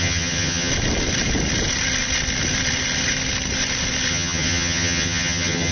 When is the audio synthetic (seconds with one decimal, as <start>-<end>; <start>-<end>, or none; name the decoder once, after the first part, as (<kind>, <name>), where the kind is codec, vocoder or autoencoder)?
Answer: 0.0-0.7 (vocoder, HiFi-GAN); 4.1-5.7